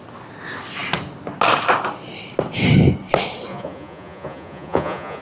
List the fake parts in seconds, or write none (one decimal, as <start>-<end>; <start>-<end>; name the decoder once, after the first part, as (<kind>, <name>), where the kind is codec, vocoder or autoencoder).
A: 3.5-5.2 (vocoder, Vocos)